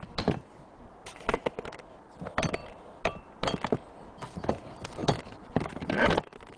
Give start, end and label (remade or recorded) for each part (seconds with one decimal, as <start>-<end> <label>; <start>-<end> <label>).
0.0-6.6 recorded